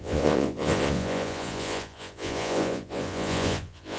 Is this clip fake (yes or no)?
yes